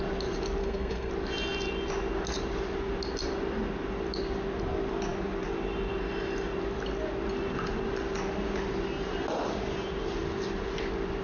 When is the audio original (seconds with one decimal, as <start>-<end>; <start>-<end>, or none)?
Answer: 0.0-0.6; 1.1-11.2